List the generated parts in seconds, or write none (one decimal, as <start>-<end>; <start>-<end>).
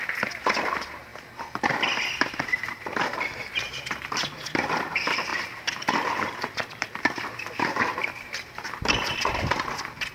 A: 0.0-1.1; 2.5-10.1